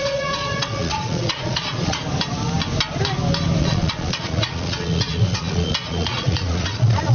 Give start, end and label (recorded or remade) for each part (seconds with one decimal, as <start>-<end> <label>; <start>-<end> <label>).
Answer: 0.0-2.0 remade; 2.0-3.6 recorded; 3.6-7.1 remade